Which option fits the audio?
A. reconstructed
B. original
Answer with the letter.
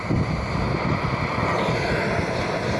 B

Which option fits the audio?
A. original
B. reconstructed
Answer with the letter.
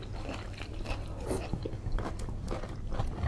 A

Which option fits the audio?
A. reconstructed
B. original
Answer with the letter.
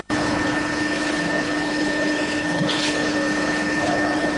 A